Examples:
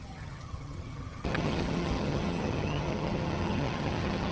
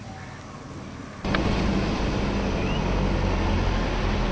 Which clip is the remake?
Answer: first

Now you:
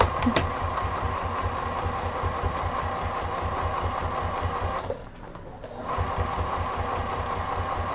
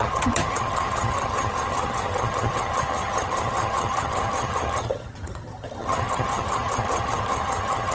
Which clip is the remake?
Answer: second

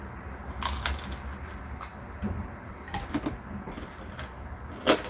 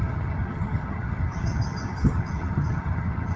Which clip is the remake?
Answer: second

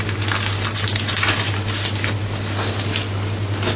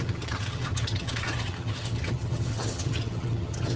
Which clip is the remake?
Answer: second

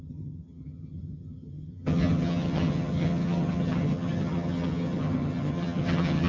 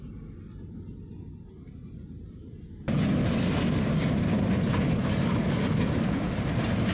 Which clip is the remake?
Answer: first